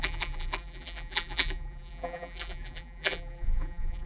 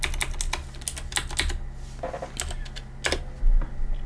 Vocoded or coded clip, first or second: first